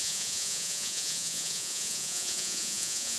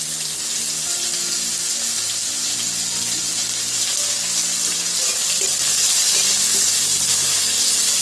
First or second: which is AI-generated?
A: first